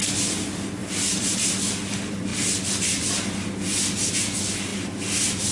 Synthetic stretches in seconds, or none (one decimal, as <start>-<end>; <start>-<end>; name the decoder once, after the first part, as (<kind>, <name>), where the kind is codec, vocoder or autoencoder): 0.8-1.7 (vocoder, BigVGAN v2); 2.3-3.2